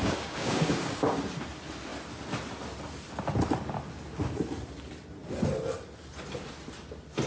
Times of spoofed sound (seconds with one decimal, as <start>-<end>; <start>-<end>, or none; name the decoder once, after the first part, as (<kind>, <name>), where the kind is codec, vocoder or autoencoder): 0.0-1.1 (codec, DAC)